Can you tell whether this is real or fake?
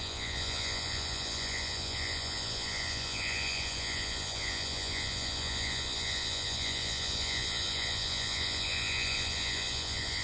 fake